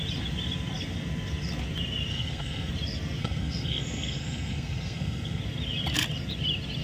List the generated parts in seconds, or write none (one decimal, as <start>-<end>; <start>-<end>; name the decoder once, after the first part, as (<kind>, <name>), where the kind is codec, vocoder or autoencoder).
2.1-2.7 (codec, SNAC); 3.2-5.4